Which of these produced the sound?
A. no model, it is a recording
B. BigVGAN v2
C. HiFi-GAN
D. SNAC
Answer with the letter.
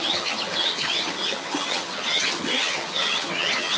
C